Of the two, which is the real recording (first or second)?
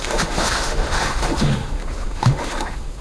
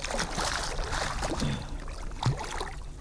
second